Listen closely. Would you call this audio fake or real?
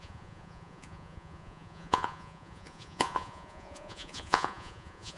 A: fake